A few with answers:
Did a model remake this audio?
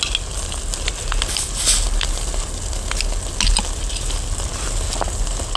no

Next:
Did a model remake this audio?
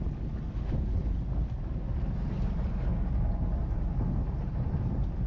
no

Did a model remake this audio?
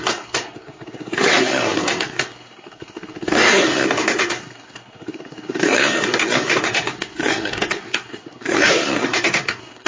yes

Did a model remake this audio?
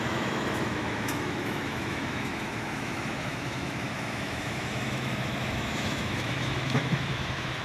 yes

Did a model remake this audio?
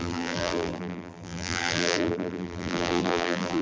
yes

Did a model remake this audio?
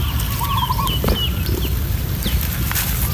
no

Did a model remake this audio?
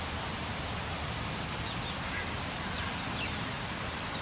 yes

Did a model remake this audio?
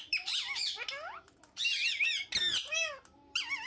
no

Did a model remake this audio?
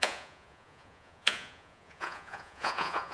yes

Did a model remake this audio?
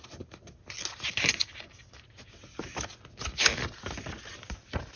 no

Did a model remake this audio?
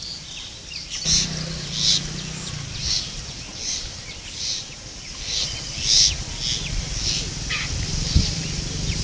no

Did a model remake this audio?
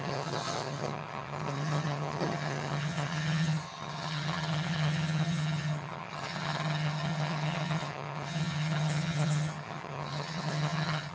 yes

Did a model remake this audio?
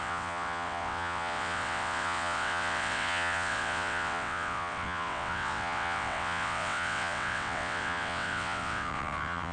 yes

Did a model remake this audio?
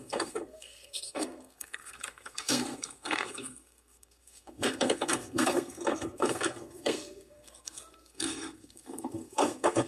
yes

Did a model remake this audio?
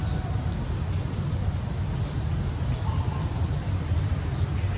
no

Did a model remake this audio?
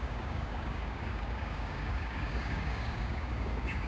yes